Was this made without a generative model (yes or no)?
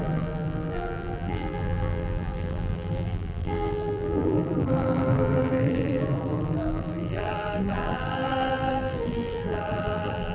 no